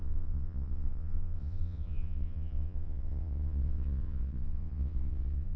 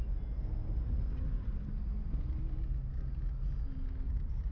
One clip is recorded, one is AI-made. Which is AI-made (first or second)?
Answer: first